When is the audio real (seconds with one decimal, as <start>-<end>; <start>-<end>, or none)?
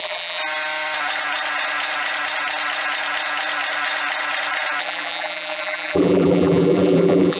0.4-4.8